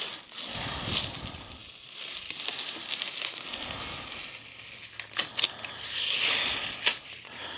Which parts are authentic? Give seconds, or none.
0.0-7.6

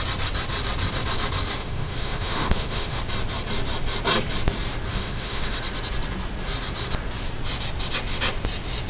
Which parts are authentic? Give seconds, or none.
0.0-1.6; 3.0-4.9; 5.6-8.9

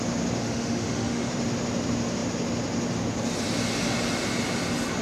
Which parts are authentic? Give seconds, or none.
0.0-0.4; 1.3-5.0

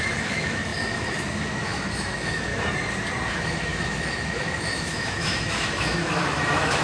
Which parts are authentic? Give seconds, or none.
2.5-3.3

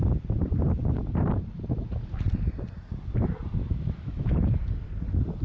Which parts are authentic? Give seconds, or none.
0.0-3.6; 4.6-5.4

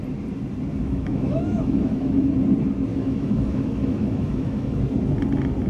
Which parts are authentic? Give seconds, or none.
0.0-0.8; 2.3-2.9; 4.8-5.7